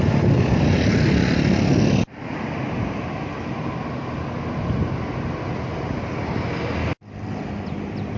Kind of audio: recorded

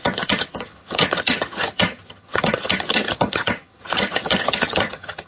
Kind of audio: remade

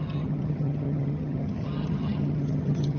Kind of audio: remade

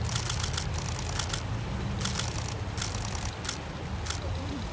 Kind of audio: recorded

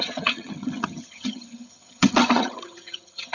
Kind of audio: remade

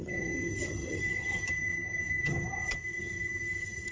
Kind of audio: remade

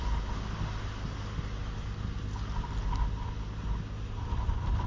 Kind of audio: recorded